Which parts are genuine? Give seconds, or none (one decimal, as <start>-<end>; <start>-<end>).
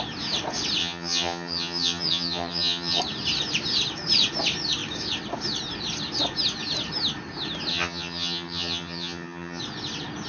0.0-0.8; 3.0-7.7; 9.6-10.3